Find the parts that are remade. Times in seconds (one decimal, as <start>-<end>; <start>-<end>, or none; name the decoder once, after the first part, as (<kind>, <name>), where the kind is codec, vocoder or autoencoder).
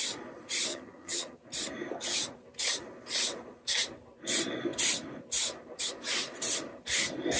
0.7-1.4 (vocoder, HiFi-GAN)